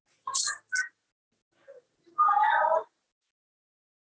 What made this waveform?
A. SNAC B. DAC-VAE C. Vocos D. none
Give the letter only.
D